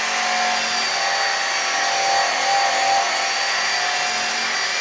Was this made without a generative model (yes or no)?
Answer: yes